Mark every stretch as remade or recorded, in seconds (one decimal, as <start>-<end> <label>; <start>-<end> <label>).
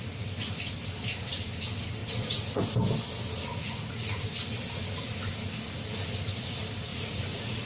0.0-2.0 recorded; 2.0-2.6 remade; 2.6-3.5 recorded; 3.5-4.3 remade; 4.3-6.9 recorded; 6.9-7.7 remade